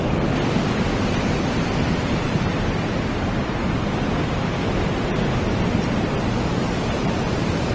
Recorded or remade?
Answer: recorded